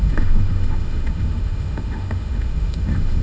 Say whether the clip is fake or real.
fake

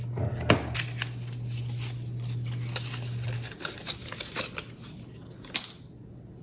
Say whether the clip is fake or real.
real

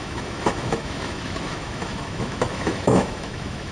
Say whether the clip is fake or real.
fake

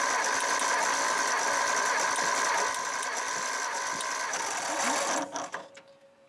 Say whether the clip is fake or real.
real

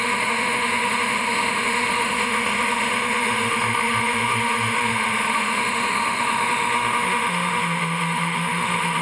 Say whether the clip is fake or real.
fake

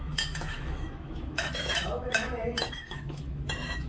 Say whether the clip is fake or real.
fake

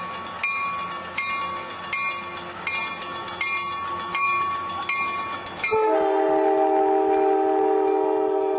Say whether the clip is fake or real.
real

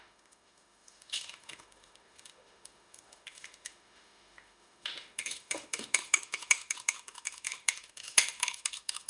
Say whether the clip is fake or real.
fake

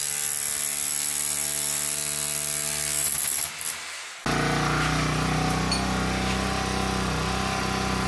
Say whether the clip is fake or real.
real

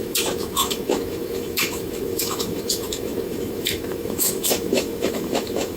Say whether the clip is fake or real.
fake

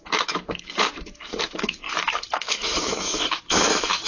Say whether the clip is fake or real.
fake